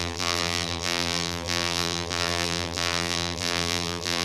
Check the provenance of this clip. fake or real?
fake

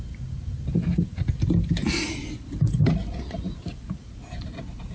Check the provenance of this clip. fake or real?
real